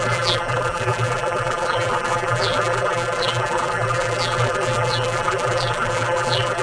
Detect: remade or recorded remade